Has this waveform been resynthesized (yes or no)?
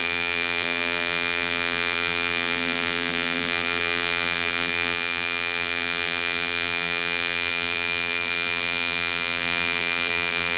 yes